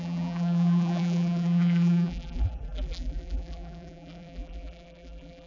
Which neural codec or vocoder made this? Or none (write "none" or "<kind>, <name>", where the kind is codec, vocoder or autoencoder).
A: vocoder, BigVGAN v2